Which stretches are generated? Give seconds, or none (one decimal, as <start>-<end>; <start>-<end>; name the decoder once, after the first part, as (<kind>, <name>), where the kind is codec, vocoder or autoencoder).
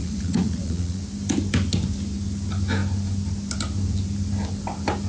0.0-1.0 (vocoder, Vocos)